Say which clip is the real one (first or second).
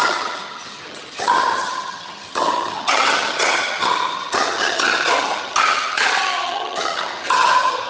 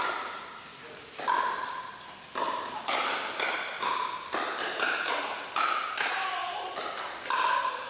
second